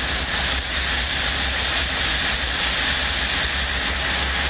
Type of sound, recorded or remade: recorded